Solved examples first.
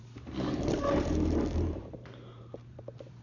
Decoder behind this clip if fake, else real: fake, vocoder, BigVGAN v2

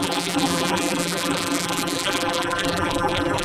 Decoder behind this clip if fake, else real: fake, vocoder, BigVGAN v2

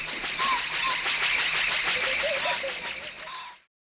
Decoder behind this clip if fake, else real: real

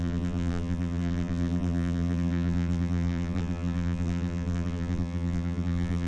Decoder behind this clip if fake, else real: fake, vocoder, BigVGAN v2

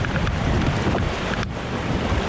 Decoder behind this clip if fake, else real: fake, vocoder, BigVGAN v2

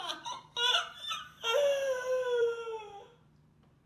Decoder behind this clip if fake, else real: fake, vocoder, BigVGAN v2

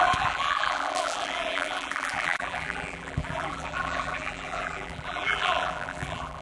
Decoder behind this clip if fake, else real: fake, vocoder, BigVGAN v2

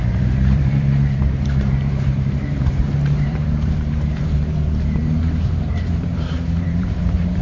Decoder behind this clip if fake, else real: fake, vocoder, BigVGAN v2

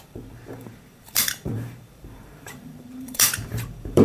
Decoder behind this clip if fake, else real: fake, vocoder, BigVGAN v2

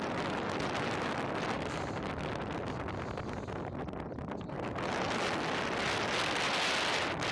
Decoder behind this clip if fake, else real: real